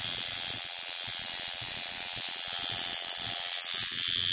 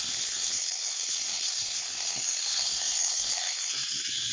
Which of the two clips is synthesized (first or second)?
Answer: second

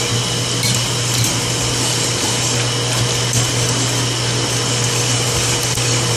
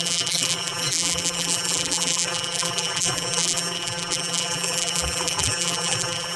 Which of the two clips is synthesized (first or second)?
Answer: second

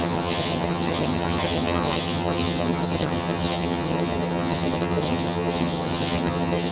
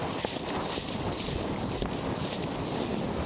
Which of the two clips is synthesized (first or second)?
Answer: first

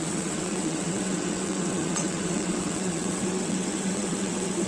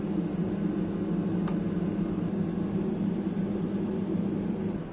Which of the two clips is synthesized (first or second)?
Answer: first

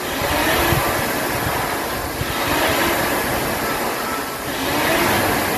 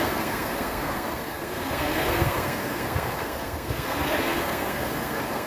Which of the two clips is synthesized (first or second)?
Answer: second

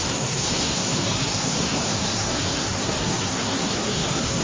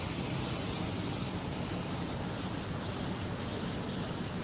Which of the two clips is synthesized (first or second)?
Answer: first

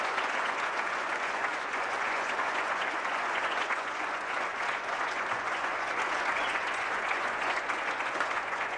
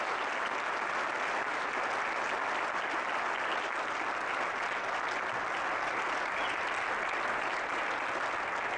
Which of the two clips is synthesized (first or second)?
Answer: first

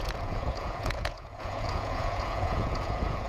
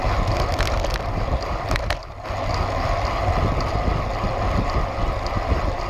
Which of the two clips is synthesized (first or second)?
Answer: first